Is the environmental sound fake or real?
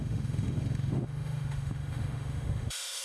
fake